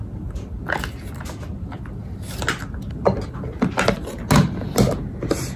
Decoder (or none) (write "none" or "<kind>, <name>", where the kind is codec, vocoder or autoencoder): none